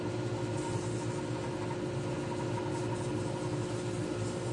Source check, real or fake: real